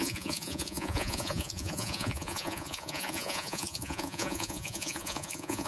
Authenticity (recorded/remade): remade